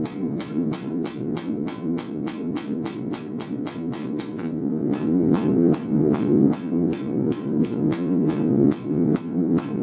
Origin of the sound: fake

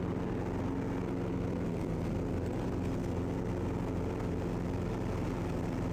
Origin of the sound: real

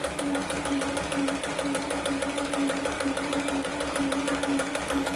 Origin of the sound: fake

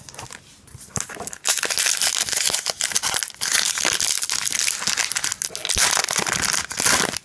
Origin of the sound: real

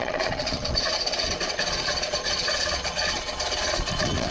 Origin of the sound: fake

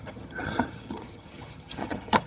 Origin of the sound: fake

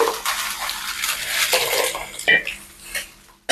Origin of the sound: real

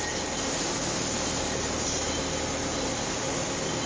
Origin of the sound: real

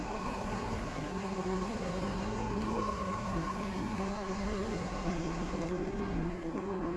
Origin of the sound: fake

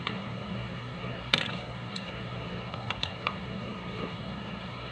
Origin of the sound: fake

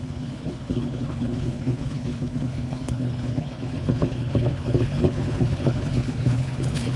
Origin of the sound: fake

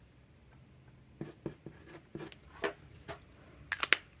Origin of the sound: real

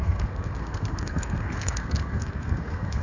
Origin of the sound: fake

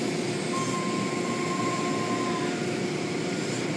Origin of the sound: real